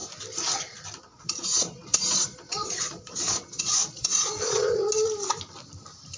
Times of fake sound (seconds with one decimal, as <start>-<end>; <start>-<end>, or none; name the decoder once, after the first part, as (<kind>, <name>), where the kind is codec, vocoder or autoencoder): 1.1-4.8 (vocoder, Vocos)